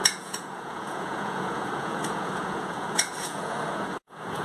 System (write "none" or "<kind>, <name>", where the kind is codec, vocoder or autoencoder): vocoder, Vocos